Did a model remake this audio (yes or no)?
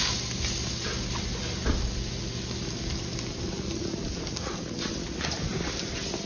no